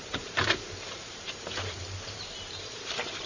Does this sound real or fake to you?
fake